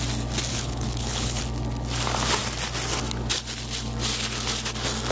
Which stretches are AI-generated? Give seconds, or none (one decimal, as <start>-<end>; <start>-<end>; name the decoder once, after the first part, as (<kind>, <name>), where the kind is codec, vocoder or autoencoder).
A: 0.5-1.4 (codec, HILCodec)